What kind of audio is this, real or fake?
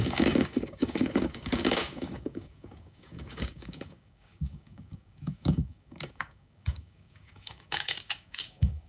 fake